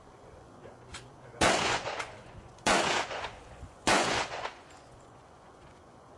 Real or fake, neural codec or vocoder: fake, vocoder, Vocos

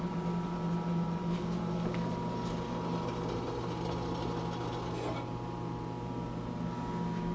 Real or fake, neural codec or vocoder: real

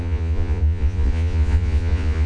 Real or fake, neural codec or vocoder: fake, vocoder, Vocos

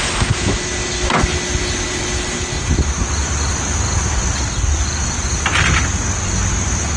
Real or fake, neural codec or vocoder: real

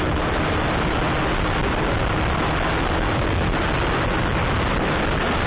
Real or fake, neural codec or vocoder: real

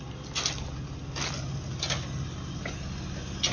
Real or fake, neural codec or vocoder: real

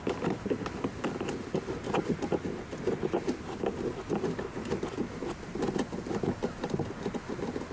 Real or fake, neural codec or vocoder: real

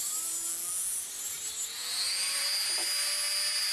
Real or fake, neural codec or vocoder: real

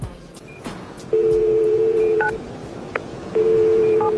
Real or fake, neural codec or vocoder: fake, vocoder, Vocos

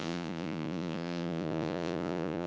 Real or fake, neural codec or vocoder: fake, vocoder, Vocos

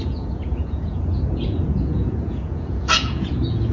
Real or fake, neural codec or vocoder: fake, vocoder, Vocos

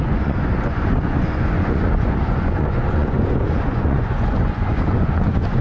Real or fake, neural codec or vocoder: fake, vocoder, Vocos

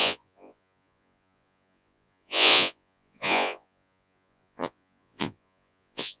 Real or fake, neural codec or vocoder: fake, vocoder, Vocos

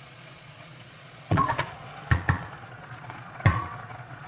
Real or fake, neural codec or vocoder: fake, vocoder, Vocos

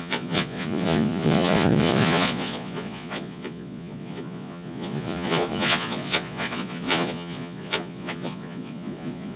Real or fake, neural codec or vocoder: fake, vocoder, Vocos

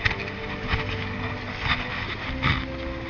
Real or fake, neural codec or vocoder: real